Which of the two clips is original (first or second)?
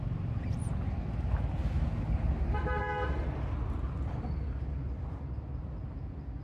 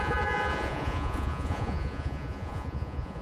first